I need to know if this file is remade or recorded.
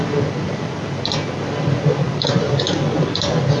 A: recorded